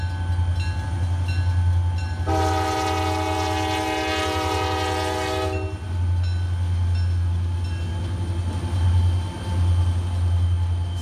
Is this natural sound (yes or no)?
yes